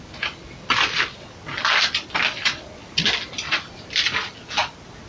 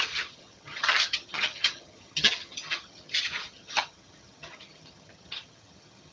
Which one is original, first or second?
first